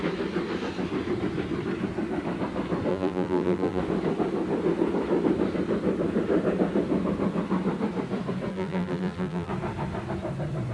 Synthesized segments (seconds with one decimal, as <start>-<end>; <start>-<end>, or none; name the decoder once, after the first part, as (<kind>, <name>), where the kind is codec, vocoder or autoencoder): 2.9-3.8 (vocoder, BigVGAN v2); 8.5-9.5